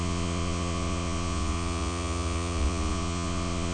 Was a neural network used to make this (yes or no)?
yes